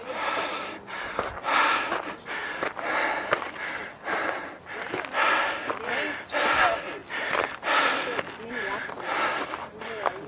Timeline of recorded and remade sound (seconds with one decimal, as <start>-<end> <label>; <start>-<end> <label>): 0.0-10.3 recorded